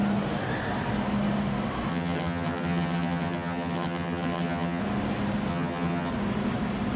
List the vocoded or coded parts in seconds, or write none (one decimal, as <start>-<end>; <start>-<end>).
1.9-4.8; 5.5-6.1